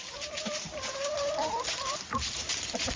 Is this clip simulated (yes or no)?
yes